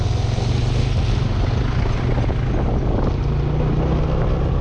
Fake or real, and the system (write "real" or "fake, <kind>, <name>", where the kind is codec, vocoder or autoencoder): real